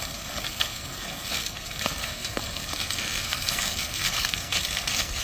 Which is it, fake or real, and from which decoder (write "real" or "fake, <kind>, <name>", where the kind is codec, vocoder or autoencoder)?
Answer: fake, codec, SNAC